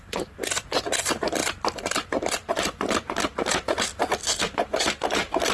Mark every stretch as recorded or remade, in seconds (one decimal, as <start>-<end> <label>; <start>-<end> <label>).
0.0-1.4 remade; 1.4-2.5 recorded; 2.5-3.9 remade; 3.9-4.4 recorded; 4.4-5.5 remade